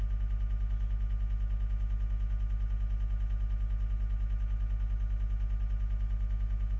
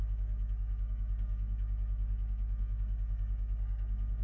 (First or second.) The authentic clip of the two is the first